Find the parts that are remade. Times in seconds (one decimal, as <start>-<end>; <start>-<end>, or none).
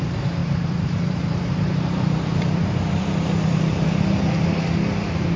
0.4-3.6